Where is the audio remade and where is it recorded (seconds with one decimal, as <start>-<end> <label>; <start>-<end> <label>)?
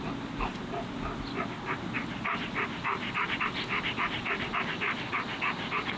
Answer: 0.0-6.0 recorded